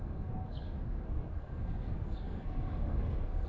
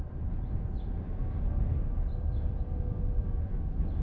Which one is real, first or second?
second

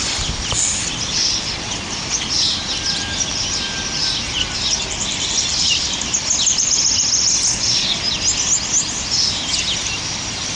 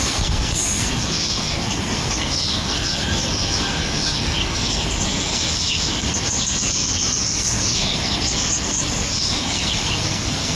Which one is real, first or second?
first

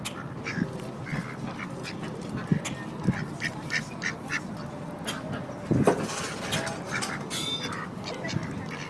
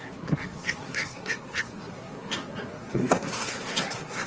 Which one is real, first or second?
first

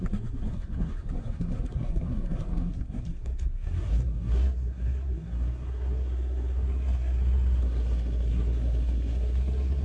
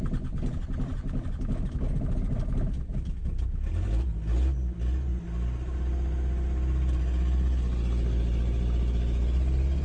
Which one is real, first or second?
second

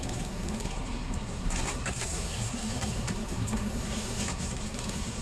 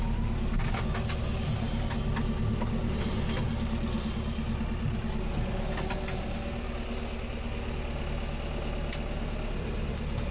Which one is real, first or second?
second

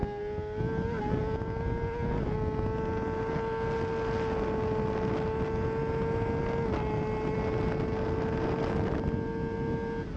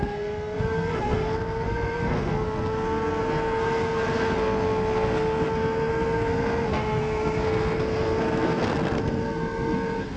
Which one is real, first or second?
first